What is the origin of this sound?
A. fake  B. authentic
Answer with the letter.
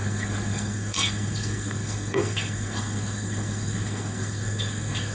A